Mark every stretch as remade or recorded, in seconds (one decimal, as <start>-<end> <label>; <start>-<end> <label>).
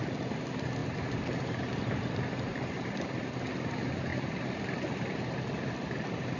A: 0.0-0.8 recorded; 0.8-2.6 remade; 2.6-6.4 recorded